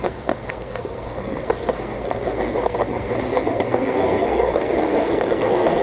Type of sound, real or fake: fake